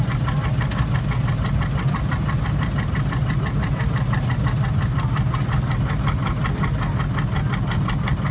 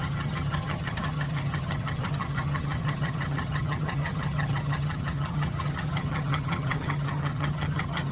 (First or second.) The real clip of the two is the first